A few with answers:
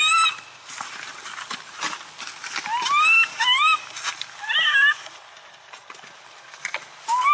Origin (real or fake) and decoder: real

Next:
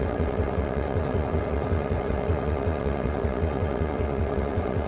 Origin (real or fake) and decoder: fake, vocoder, WaveNeXt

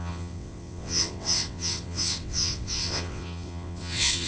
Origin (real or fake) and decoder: fake, vocoder, WaveNeXt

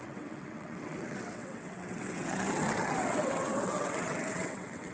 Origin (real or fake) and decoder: fake, vocoder, WaveNeXt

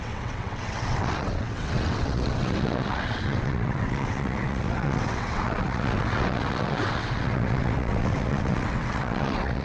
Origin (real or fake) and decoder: fake, vocoder, WaveNeXt